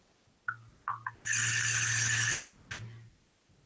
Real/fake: real